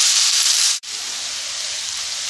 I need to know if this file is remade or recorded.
remade